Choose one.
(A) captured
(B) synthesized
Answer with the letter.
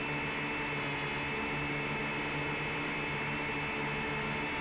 A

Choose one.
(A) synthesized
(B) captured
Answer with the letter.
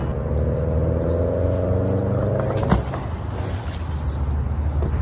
B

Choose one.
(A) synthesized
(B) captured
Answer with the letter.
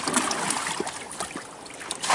B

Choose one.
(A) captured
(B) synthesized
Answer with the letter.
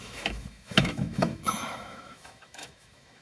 B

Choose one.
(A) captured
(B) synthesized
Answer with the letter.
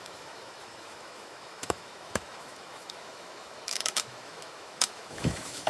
B